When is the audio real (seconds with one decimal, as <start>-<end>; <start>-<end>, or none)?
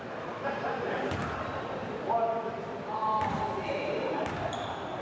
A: 1.2-4.2